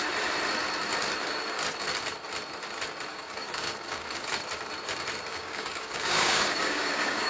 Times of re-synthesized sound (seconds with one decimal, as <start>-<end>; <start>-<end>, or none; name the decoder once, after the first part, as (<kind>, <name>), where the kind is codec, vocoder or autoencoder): 3.1-4.3 (codec, DAC); 5.3-7.3